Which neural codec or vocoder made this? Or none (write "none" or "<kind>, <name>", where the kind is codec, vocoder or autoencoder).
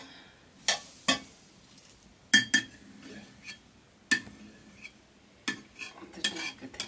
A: none